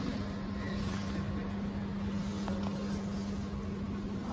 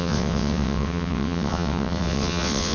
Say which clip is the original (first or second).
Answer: first